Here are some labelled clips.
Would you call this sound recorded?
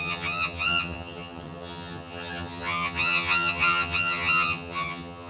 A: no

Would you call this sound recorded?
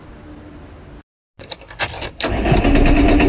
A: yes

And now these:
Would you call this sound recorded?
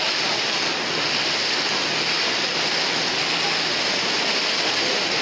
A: yes